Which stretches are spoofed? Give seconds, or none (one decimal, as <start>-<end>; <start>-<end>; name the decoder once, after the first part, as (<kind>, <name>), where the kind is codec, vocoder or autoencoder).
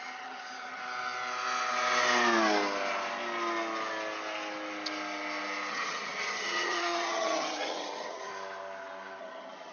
0.0-0.8 (vocoder, HiFi-GAN); 5.7-8.3; 9.2-9.7